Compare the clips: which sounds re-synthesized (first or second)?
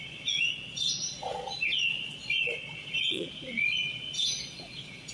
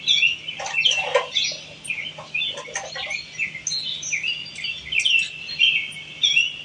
first